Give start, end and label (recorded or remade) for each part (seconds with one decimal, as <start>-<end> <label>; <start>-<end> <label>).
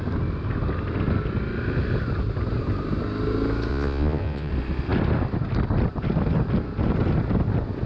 0.0-3.7 recorded; 3.7-4.5 remade; 4.5-7.9 recorded